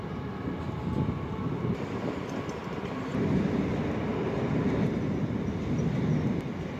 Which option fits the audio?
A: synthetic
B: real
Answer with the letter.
B